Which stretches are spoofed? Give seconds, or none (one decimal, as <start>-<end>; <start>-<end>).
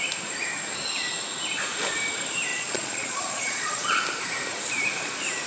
2.5-4.0